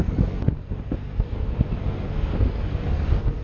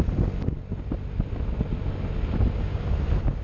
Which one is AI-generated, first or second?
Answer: first